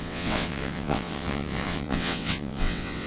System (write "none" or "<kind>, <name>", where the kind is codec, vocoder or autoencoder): vocoder, WaveNeXt